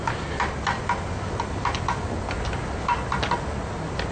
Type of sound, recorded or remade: recorded